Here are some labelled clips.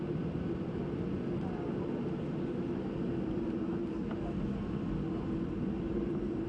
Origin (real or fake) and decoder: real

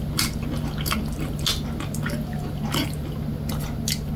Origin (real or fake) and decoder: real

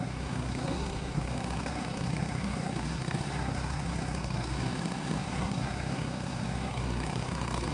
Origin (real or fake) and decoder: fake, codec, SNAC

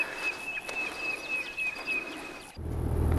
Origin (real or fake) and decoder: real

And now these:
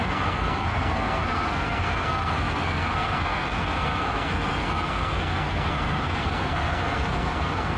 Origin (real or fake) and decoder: fake, codec, SNAC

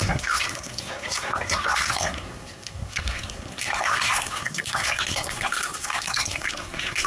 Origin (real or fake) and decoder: fake, codec, SNAC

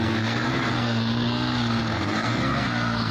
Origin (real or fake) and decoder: fake, codec, SNAC